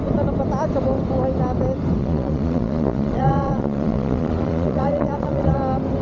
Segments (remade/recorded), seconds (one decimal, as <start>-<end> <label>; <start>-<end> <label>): 0.0-2.0 recorded; 2.0-5.6 remade; 5.6-6.0 recorded